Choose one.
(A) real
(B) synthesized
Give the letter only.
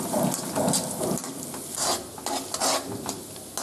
A